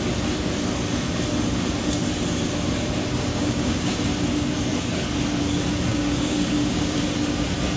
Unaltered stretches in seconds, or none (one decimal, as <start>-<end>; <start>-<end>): 0.0-3.3; 4.0-5.9; 7.0-7.8